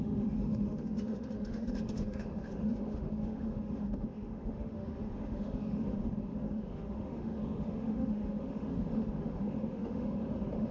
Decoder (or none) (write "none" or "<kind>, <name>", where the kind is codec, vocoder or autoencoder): autoencoder, DAC-VAE